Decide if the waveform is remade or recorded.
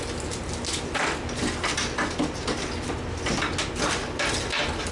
recorded